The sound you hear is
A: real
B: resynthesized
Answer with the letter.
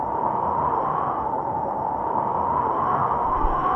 B